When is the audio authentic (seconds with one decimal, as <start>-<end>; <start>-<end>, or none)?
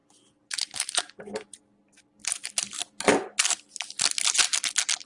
0.0-5.1